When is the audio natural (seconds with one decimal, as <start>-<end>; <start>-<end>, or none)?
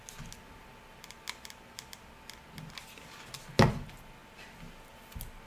0.0-5.5